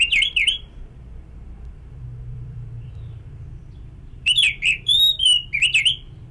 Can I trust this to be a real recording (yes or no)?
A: no